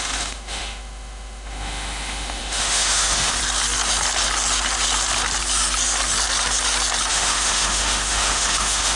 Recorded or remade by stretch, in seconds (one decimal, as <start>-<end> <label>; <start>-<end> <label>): 0.0-3.4 remade; 3.4-7.1 recorded; 7.1-9.0 remade